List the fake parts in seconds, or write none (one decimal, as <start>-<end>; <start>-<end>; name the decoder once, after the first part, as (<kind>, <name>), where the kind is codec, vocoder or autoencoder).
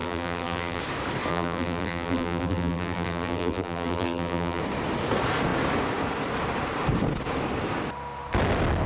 0.0-0.8 (vocoder, BigVGAN v2); 1.3-4.6